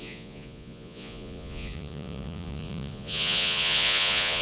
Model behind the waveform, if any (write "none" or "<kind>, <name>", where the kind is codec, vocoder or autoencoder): vocoder, Vocos